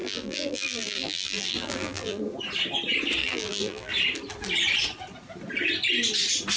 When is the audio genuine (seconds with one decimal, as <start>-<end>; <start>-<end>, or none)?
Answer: 2.2-3.2; 3.9-6.6